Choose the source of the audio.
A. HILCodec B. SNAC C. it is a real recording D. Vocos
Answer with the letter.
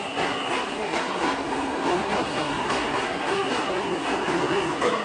B